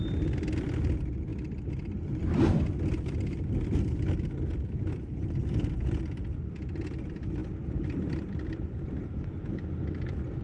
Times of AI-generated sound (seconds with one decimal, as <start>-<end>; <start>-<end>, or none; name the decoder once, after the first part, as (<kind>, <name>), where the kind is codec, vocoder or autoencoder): none